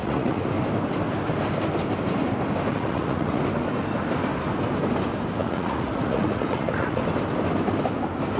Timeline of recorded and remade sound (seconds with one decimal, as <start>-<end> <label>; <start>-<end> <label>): 0.0-0.5 remade; 0.5-2.7 recorded; 2.7-3.4 remade; 3.4-5.4 recorded; 5.4-7.0 remade; 7.0-8.4 recorded